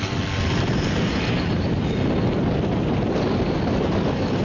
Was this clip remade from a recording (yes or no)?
no